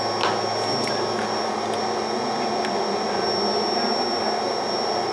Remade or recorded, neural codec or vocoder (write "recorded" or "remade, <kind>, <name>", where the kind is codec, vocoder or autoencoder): recorded